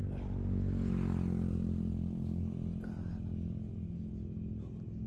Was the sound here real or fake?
real